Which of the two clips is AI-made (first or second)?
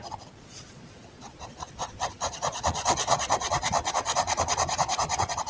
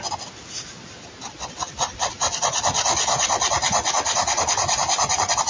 first